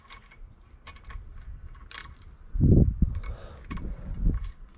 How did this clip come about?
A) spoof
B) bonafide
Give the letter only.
B